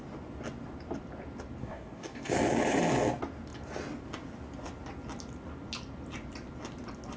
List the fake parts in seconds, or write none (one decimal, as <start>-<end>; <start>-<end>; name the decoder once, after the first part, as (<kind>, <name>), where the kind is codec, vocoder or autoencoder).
1.6-2.3 (codec, DAC)